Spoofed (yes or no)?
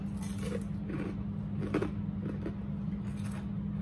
no